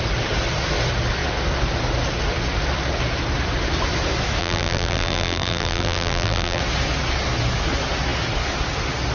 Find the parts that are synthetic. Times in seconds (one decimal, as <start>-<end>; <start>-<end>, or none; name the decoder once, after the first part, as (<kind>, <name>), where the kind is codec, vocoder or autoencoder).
4.4-6.6 (vocoder, BigVGAN v2)